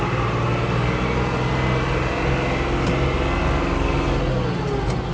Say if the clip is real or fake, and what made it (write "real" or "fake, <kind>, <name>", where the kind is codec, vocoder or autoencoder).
real